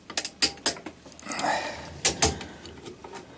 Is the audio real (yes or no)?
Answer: yes